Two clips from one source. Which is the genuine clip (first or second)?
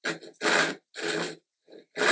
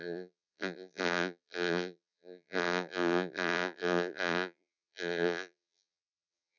first